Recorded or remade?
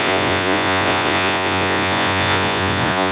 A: remade